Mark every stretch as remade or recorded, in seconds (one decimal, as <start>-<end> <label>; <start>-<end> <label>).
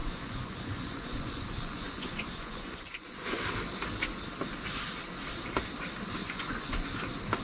0.0-3.4 remade; 3.4-6.2 recorded; 6.2-7.0 remade; 7.0-7.4 recorded